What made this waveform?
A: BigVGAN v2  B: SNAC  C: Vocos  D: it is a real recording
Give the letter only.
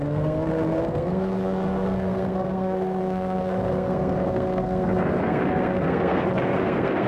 B